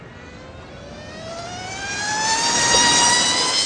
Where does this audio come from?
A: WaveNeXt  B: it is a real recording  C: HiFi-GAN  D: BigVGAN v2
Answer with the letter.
B